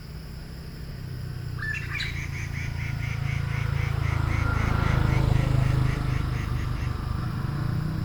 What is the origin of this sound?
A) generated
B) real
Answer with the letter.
B